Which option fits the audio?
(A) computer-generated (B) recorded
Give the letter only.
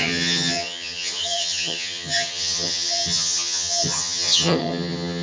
A